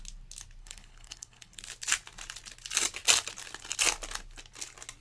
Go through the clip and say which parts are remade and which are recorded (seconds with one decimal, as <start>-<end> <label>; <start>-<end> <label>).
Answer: 0.0-0.6 recorded; 0.6-1.6 remade; 1.6-5.0 recorded